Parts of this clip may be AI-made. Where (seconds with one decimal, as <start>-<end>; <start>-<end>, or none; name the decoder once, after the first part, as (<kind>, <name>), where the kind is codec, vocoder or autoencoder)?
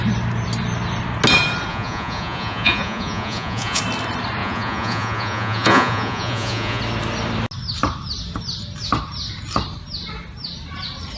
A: 1.7-3.8 (vocoder, Vocos); 4.4-6.8